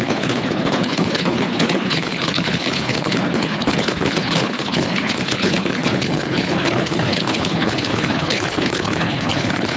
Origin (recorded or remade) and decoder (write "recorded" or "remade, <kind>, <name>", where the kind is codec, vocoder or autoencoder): remade, codec, HILCodec